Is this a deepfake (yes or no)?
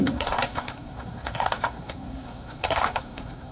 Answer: yes